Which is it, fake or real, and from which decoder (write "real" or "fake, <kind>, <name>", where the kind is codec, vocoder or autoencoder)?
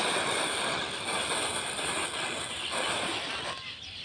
real